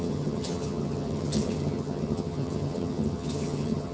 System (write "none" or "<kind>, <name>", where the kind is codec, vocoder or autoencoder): vocoder, HiFi-GAN